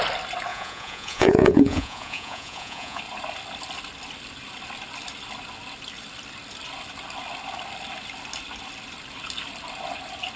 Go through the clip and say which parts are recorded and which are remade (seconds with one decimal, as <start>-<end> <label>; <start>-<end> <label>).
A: 0.0-0.5 recorded; 0.5-3.0 remade; 3.0-10.4 recorded